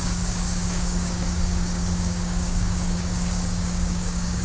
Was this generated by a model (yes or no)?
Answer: yes